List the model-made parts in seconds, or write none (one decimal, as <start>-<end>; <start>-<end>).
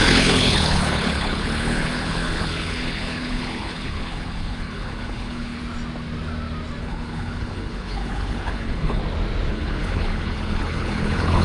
0.0-5.6; 6.8-9.0; 9.5-11.4